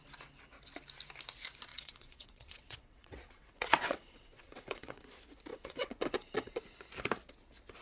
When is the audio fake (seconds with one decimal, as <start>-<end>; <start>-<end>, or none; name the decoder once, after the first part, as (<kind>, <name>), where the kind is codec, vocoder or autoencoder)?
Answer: 1.7-5.0 (vocoder, WaveNeXt); 5.5-6.6